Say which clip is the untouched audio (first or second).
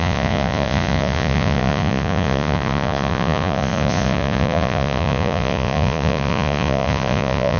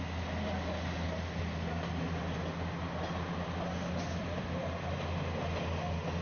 second